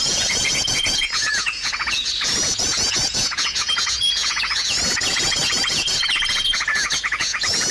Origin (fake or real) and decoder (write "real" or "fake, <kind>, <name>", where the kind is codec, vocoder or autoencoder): fake, vocoder, Vocos